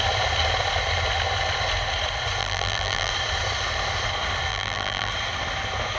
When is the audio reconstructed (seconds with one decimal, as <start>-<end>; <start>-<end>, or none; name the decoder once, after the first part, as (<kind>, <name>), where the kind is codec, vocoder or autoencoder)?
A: 2.4-3.1 (vocoder, BigVGAN v2); 4.5-5.1